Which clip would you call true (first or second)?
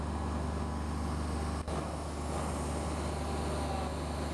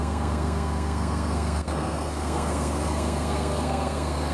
first